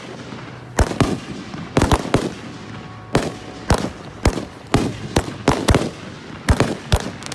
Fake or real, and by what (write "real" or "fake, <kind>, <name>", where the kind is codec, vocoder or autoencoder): real